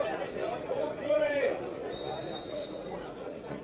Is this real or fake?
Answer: fake